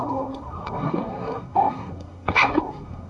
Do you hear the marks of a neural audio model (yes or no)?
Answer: yes